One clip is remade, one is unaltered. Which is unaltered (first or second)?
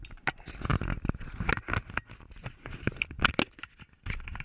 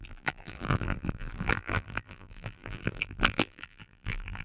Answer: first